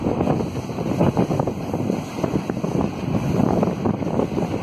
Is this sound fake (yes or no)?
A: no